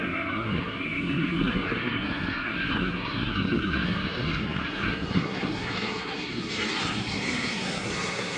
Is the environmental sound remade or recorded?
remade